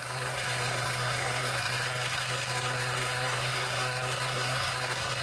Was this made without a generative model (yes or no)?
no